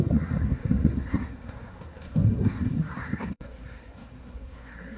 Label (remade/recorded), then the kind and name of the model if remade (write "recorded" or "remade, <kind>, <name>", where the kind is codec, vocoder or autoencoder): remade, codec, SNAC